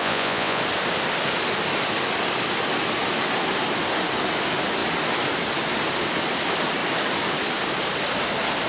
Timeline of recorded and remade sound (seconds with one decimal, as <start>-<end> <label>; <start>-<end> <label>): 0.0-0.6 remade; 0.6-8.7 recorded